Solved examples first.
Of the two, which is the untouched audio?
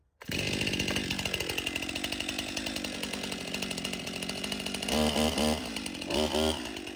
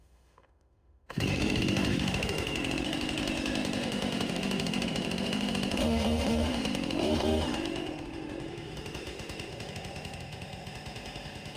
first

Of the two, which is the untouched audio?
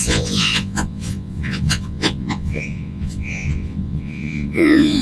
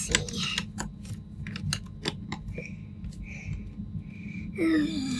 second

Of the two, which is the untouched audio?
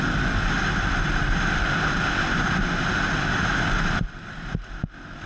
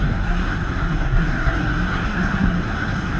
first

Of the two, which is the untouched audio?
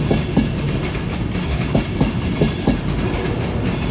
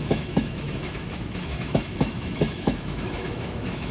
first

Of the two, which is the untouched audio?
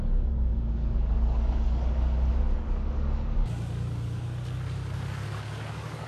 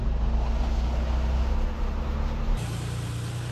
second